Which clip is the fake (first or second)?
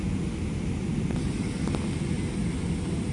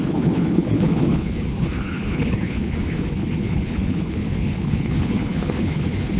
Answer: second